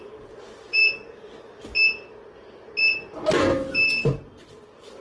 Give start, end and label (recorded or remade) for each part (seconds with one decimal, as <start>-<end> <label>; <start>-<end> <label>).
0.0-0.8 remade; 0.8-3.7 recorded; 3.7-5.0 remade